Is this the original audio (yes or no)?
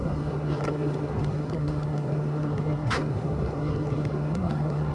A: no